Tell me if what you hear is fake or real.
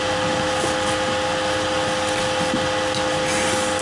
real